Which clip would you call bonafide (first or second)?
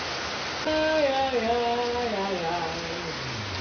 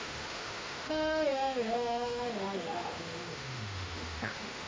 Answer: first